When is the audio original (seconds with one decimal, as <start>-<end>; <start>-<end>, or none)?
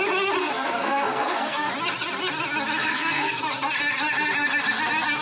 0.0-0.4; 1.7-2.8; 3.4-5.2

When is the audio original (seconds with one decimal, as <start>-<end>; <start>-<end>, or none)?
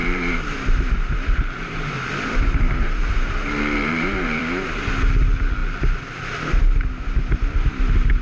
4.9-8.2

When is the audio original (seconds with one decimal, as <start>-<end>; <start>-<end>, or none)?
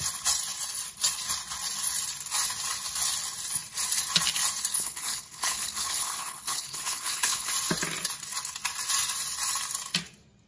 0.0-4.8; 7.5-10.5